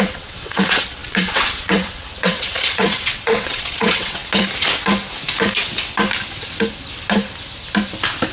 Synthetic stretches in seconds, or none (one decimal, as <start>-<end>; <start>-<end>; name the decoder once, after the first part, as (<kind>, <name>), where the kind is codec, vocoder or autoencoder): 0.0-4.2 (vocoder, WaveNeXt)